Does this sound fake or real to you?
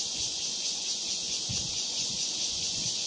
fake